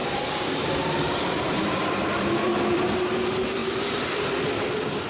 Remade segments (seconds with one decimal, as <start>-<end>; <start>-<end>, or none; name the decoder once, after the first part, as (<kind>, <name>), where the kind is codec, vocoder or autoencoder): 0.0-3.1 (vocoder, BigVGAN v2); 3.6-4.5